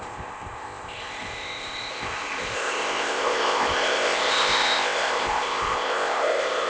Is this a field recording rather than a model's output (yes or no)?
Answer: no